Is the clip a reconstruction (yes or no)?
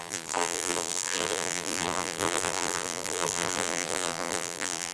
yes